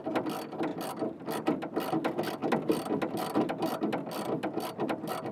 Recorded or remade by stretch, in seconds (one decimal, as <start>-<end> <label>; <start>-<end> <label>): 0.0-5.3 recorded